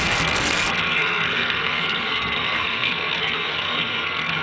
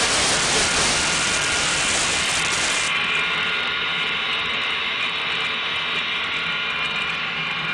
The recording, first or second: second